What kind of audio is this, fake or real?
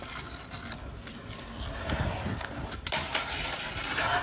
real